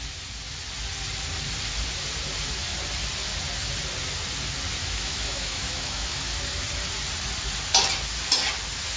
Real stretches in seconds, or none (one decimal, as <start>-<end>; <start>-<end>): 0.0-4.8; 6.3-9.0